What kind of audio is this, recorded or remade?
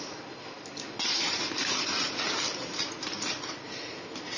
recorded